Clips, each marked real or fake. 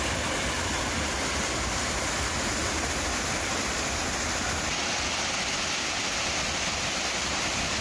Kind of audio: real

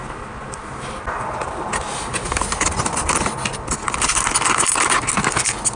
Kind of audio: real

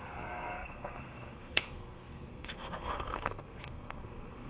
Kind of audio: fake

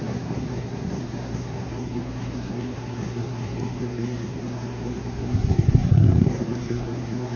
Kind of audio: fake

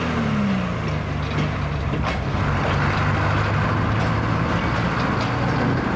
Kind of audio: real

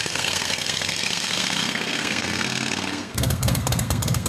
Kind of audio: fake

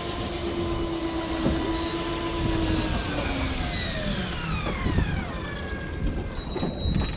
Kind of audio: real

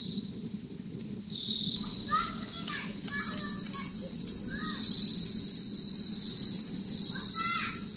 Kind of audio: real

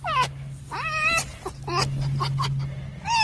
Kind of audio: real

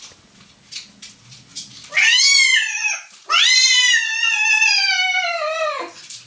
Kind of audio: real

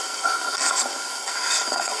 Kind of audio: fake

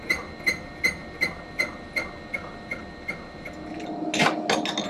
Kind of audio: real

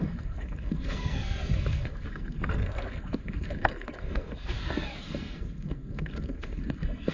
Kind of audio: fake